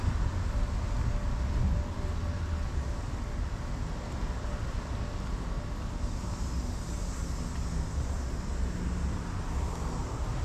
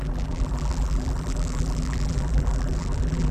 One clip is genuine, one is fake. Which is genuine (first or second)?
first